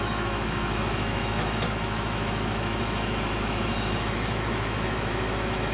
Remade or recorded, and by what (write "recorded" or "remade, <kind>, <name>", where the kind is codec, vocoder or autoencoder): remade, autoencoder, DAC-VAE